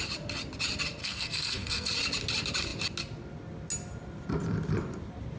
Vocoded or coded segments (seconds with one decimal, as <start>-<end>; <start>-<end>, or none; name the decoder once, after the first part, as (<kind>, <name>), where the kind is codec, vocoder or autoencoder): 1.0-1.9 (codec, SNAC)